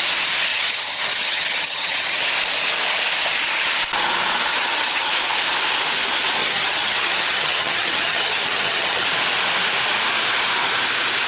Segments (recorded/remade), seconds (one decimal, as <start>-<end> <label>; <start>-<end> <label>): 0.0-0.5 recorded; 0.5-2.2 remade; 2.2-4.5 recorded; 4.5-5.1 remade; 5.1-6.4 recorded; 6.4-9.1 remade; 9.1-11.3 recorded